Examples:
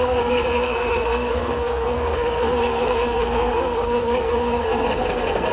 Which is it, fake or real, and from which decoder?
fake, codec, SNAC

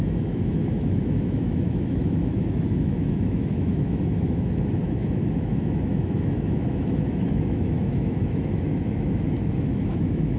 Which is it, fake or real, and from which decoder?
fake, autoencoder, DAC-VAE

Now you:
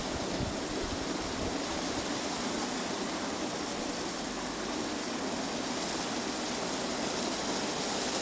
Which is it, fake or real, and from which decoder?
real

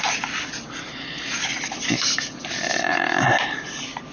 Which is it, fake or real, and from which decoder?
real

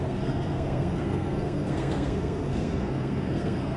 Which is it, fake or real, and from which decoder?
fake, codec, SNAC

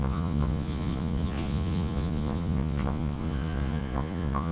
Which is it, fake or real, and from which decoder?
fake, vocoder, Vocos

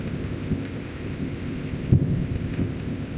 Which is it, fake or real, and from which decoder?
fake, codec, ZipCodec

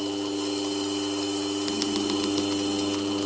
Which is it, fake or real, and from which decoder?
real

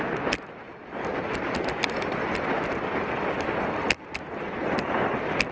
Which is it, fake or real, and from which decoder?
real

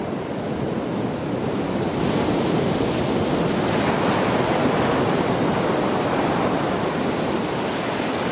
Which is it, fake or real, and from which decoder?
real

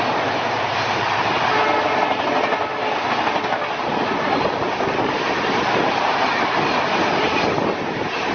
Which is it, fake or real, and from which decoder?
real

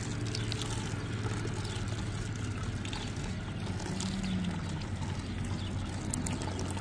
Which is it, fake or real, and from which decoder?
real